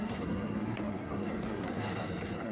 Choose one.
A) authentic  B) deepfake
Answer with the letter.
B